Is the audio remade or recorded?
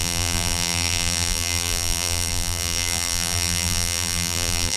remade